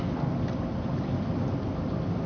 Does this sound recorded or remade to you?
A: recorded